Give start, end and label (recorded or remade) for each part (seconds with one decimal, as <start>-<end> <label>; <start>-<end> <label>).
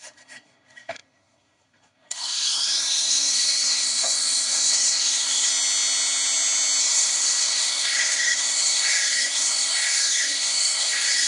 0.0-5.5 remade; 5.5-6.8 recorded; 6.8-11.3 remade